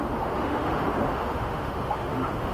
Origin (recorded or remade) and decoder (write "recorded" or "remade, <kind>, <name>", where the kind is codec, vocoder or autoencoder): remade, autoencoder, DAC-VAE